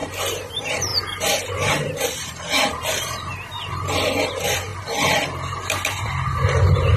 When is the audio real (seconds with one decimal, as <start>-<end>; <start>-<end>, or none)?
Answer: 0.0-0.5; 4.7-7.0